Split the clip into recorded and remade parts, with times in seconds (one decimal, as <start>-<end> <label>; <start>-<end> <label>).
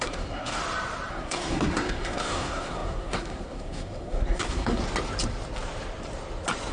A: 0.0-0.6 remade; 0.6-1.1 recorded; 1.1-4.8 remade; 4.8-6.7 recorded